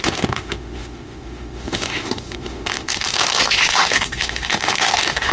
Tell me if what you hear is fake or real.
fake